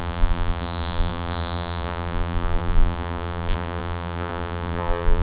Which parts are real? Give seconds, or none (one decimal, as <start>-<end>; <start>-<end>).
none